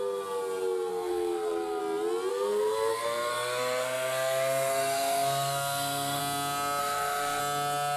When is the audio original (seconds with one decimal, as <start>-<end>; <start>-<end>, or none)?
0.0-0.9; 1.8-2.3; 6.2-6.8; 7.4-8.0